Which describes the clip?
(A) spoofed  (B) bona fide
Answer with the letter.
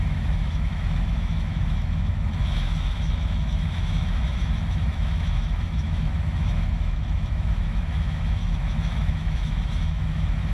A